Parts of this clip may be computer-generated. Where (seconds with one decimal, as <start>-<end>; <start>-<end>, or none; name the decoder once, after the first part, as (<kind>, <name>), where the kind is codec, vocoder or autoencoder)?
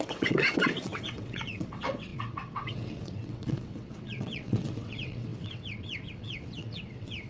0.0-7.3 (vocoder, WaveNeXt)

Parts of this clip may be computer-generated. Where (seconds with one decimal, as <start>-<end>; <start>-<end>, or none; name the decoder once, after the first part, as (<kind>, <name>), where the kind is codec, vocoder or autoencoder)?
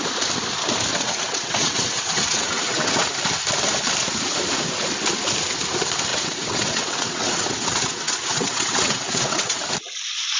0.9-3.1 (vocoder, WaveNeXt); 6.1-9.7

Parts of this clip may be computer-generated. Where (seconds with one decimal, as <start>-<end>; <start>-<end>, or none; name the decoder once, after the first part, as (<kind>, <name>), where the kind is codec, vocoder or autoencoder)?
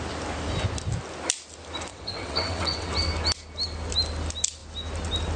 1.9-2.9 (vocoder, WaveNeXt)